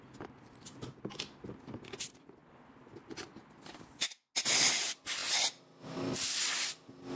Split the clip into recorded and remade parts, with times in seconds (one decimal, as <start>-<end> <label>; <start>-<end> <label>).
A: 0.0-7.2 recorded

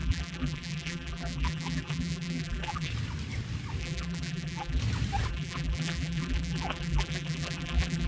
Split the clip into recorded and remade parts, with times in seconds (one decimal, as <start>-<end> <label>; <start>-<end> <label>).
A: 0.0-2.9 remade; 2.9-3.8 recorded; 3.8-4.8 remade; 4.8-5.3 recorded; 5.3-8.1 remade

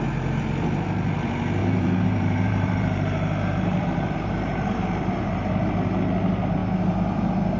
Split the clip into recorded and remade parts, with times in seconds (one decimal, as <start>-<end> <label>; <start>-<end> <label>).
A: 0.0-1.6 recorded; 1.6-5.5 remade; 5.5-7.6 recorded

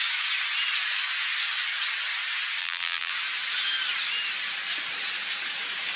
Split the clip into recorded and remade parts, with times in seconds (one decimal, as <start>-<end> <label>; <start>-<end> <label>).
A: 0.0-2.6 recorded; 2.6-3.1 remade; 3.1-6.0 recorded

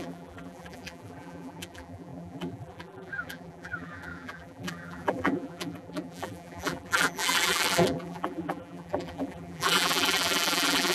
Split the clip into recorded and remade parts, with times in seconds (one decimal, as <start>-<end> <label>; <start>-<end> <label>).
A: 0.0-10.9 remade

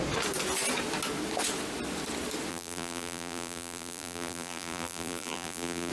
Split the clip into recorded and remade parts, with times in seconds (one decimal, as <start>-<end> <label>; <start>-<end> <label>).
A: 0.0-2.5 recorded; 2.5-5.9 remade